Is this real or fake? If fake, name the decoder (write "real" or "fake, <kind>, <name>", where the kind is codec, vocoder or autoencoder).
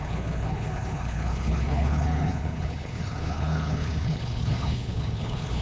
fake, codec, HILCodec